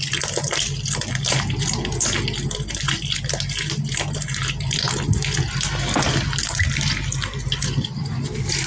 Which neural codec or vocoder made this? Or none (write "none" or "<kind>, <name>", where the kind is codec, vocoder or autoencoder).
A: none